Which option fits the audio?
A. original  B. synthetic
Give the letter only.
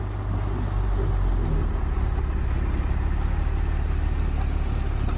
A